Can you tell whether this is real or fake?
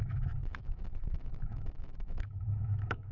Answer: fake